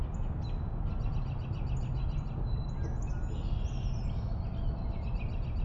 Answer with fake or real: real